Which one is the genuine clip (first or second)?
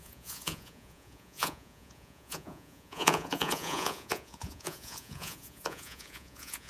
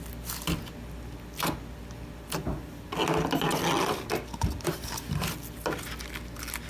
second